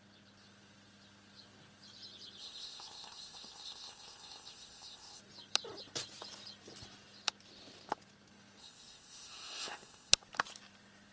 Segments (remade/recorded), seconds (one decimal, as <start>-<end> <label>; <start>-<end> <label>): 0.0-2.4 recorded; 2.4-5.2 remade; 5.2-8.6 recorded; 8.6-10.1 remade; 10.1-11.1 recorded